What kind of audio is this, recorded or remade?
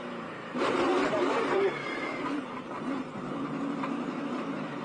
remade